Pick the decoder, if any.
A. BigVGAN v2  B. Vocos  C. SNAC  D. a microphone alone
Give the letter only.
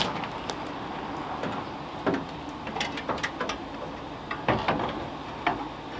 D